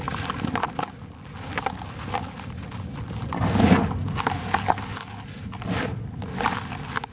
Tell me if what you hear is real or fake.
real